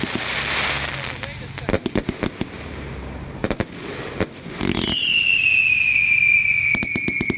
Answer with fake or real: real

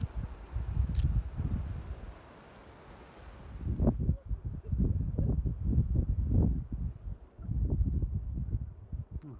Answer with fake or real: real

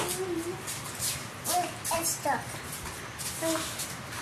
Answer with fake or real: real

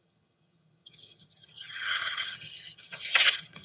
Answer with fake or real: fake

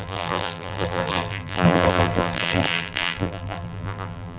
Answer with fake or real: fake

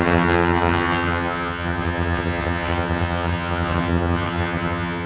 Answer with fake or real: fake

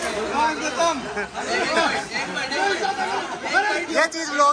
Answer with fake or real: real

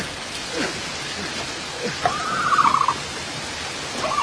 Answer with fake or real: real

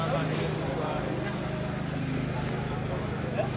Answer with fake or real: real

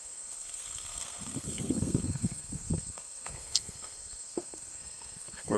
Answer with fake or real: fake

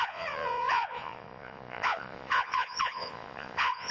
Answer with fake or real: fake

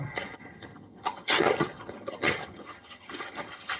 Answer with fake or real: fake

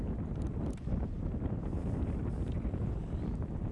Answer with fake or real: real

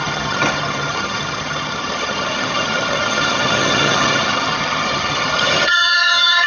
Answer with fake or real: fake